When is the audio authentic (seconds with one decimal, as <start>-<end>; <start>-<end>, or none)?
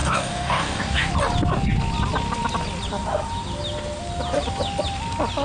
1.1-5.4